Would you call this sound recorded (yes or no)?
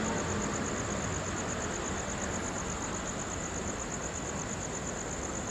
yes